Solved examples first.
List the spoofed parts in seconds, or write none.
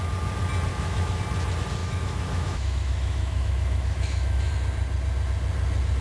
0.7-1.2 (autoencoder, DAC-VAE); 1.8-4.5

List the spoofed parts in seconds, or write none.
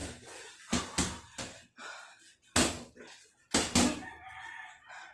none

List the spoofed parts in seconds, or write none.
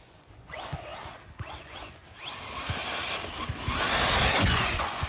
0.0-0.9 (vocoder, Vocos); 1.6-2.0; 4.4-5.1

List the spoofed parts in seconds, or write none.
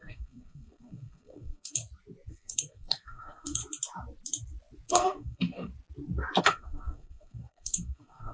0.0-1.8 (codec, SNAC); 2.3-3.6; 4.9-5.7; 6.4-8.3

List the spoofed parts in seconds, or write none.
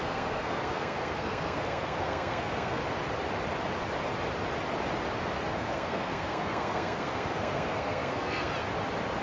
0.0-2.8 (codec, SNAC); 5.5-8.5